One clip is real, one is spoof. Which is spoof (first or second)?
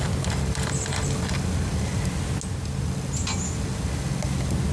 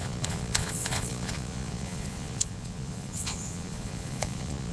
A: second